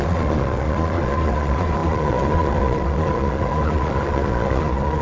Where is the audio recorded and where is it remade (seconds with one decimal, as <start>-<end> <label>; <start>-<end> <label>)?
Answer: 0.0-5.0 remade